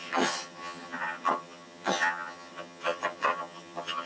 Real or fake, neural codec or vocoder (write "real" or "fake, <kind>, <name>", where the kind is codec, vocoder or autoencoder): fake, vocoder, HiFi-GAN